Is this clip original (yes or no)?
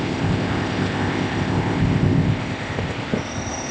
no